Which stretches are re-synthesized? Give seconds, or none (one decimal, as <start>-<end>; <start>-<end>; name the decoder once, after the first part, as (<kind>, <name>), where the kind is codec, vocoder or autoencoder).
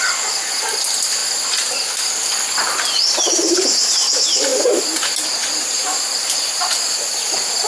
4.5-6.5 (vocoder, BigVGAN v2)